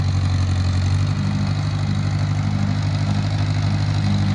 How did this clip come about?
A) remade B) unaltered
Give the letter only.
B